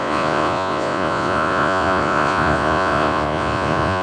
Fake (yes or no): yes